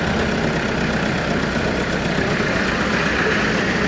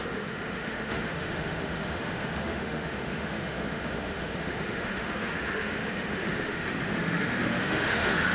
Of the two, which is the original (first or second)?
first